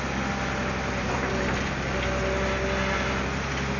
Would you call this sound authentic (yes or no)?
yes